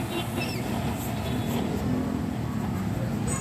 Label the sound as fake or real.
real